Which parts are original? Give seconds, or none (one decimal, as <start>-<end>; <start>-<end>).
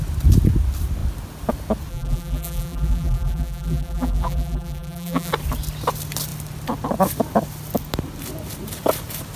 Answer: 0.0-1.9; 5.3-9.4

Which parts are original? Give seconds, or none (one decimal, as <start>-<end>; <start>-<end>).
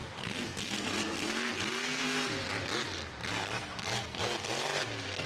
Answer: 2.0-3.3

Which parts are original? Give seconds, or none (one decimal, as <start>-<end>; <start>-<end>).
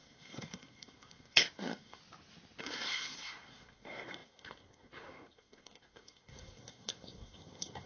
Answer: 2.0-2.6